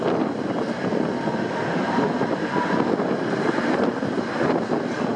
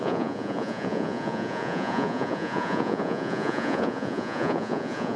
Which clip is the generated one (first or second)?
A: second